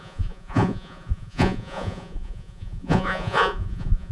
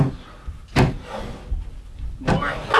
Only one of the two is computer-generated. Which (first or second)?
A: first